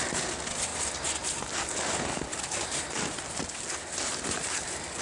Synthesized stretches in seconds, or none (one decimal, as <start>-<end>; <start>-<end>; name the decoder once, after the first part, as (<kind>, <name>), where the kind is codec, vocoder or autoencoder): none